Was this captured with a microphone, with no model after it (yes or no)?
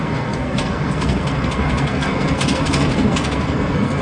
no